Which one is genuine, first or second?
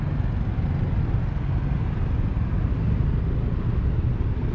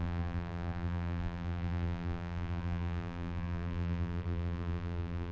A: first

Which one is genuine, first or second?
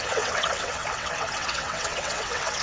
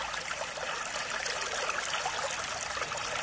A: second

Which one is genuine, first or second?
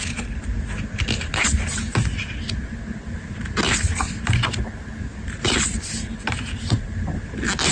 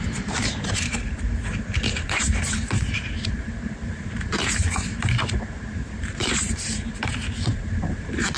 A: first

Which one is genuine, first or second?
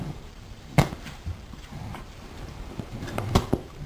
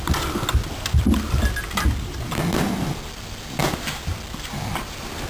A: second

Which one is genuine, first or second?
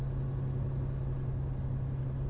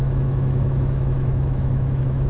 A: first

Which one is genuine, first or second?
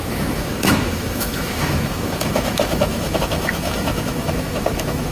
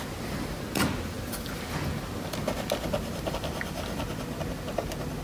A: second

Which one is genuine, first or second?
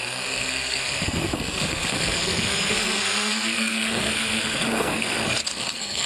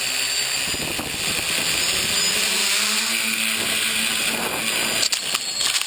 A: second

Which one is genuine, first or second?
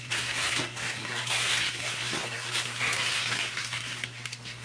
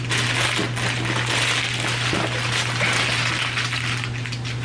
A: second